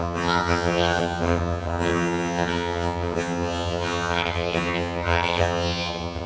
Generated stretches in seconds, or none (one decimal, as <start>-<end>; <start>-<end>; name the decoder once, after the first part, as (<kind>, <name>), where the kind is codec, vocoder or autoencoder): 0.0-6.3 (vocoder, HiFi-GAN)